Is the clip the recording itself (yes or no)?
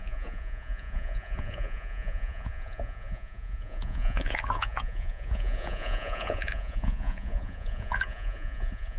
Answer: no